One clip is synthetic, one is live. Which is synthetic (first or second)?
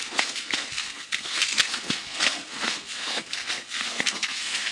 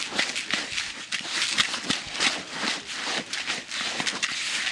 first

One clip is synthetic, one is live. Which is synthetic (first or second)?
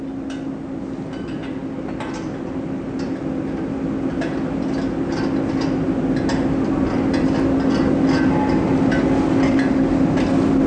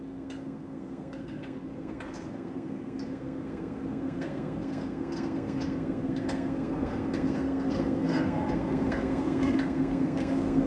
second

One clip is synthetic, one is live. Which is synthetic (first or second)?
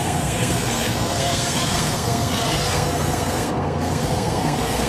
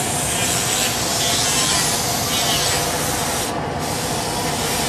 first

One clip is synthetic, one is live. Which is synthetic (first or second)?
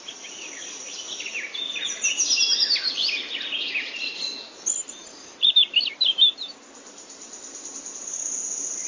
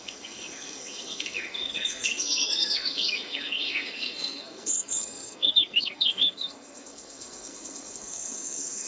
second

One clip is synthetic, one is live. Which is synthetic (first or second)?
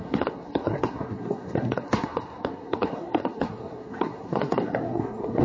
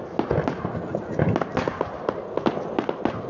first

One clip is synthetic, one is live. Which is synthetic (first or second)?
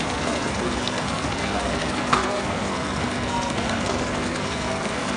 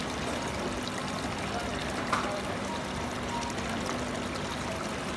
first